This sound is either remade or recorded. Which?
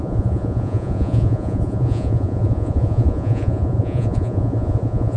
remade